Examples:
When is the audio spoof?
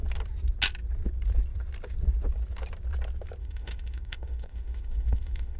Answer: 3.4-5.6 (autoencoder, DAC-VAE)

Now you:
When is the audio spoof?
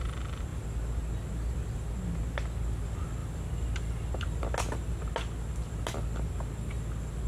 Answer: none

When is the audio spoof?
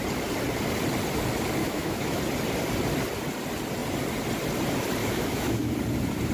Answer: 1.6-2.2 (autoencoder, DAC-VAE); 5.0-5.7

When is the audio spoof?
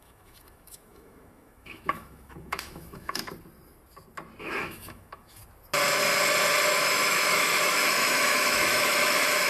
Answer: 0.0-3.2 (autoencoder, DAC-VAE); 4.4-5.4; 6.7-9.5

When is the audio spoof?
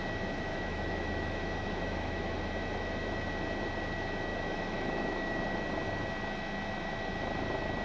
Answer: 0.5-2.4 (autoencoder, DAC-VAE); 4.3-5.4